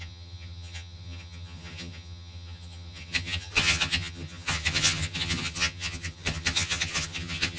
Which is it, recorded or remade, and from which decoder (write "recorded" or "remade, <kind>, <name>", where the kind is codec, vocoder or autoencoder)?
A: remade, vocoder, HiFi-GAN